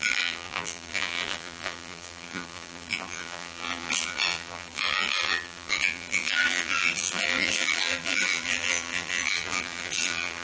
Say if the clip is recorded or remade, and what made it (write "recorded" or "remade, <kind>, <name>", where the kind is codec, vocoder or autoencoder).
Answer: remade, vocoder, BigVGAN v2